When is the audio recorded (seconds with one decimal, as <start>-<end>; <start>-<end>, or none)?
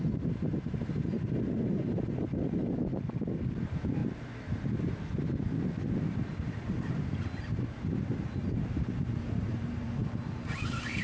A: 2.6-3.6; 4.0-9.2